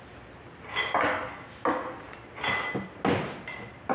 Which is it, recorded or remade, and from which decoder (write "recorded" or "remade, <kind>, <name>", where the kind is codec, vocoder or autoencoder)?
recorded